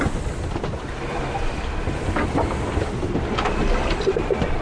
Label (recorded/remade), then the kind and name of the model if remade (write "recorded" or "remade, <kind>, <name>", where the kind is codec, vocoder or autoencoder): recorded